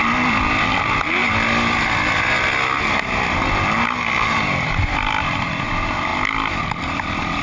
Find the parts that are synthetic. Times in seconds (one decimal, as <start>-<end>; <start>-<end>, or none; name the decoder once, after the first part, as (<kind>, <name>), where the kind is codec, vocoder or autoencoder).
none